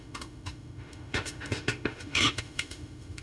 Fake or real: fake